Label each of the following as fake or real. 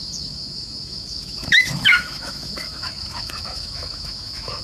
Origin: fake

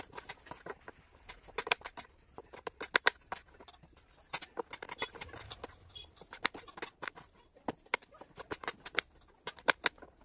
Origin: real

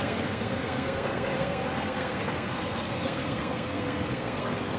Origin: fake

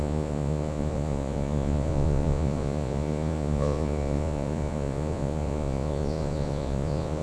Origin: fake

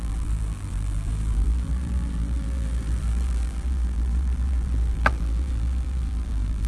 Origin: fake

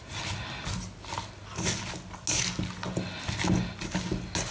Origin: real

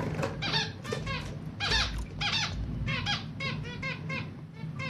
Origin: real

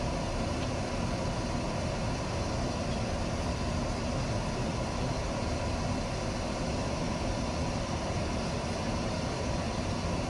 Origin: real